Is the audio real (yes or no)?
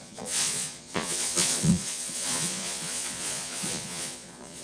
no